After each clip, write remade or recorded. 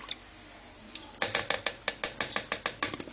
recorded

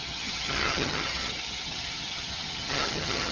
remade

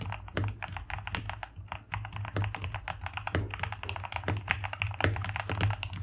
recorded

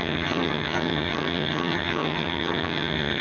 remade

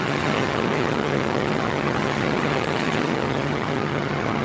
remade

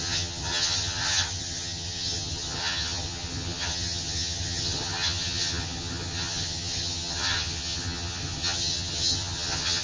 remade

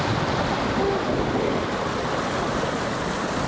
recorded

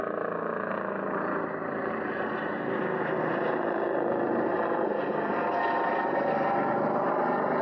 recorded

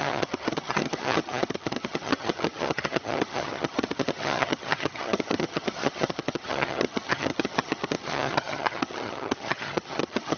remade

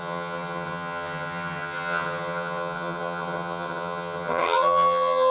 remade